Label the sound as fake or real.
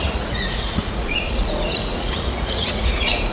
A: fake